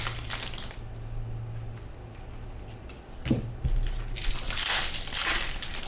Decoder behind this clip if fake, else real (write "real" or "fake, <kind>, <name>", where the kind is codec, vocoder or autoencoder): real